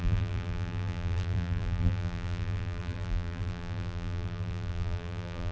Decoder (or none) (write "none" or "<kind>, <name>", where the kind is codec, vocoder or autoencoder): vocoder, BigVGAN v2